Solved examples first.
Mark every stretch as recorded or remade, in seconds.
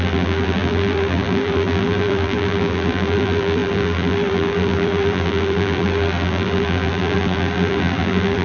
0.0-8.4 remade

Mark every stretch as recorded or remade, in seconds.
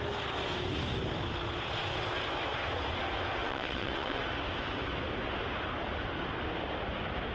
0.0-3.4 recorded; 3.4-4.2 remade; 4.2-7.3 recorded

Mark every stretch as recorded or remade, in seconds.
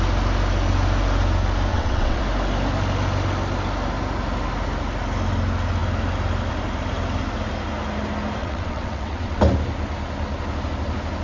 0.0-1.7 recorded; 1.7-2.2 remade; 2.2-8.4 recorded; 8.4-9.4 remade; 9.4-11.2 recorded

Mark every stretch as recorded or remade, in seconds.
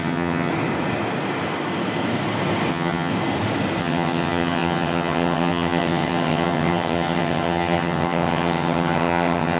0.0-0.5 remade; 0.5-2.7 recorded; 2.7-3.1 remade; 3.1-3.8 recorded; 3.8-9.6 remade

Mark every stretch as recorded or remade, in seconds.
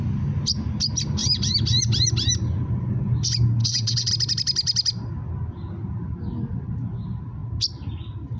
0.0-3.6 recorded; 3.6-4.1 remade; 4.1-8.4 recorded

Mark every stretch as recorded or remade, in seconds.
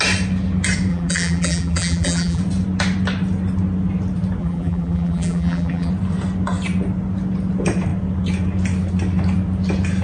0.0-0.9 recorded; 0.9-2.4 remade; 2.4-4.4 recorded; 4.4-5.9 remade; 5.9-10.0 recorded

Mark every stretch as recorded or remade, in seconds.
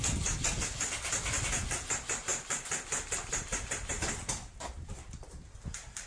0.0-6.1 recorded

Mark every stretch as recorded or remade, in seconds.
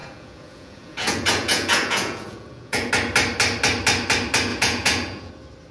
0.0-2.9 remade; 2.9-4.5 recorded; 4.5-5.3 remade; 5.3-5.7 recorded